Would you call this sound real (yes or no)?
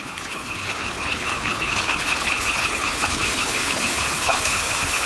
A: no